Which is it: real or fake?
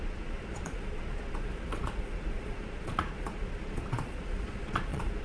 fake